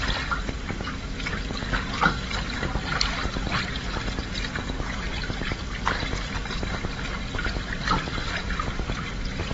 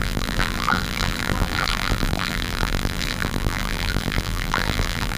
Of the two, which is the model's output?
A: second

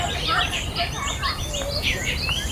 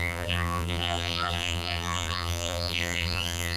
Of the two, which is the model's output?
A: second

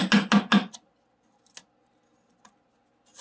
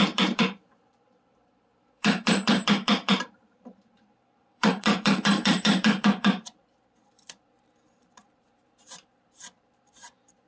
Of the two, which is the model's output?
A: second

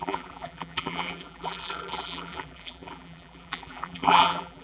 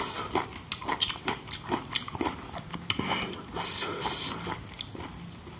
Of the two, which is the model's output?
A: first